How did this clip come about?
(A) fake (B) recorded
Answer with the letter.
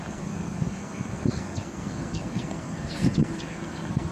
A